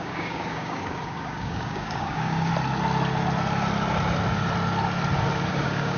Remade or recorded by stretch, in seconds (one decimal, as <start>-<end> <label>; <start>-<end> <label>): 0.0-2.5 remade; 2.5-5.5 recorded; 5.5-6.0 remade